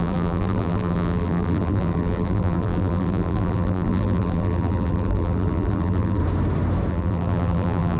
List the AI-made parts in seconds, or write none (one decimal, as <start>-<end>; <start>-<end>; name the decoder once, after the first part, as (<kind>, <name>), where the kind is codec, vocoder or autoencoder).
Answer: 0.0-6.2 (vocoder, BigVGAN v2); 6.9-8.0